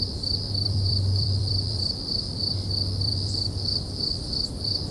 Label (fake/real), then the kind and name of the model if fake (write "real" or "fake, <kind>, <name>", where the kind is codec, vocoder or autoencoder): fake, vocoder, BigVGAN v2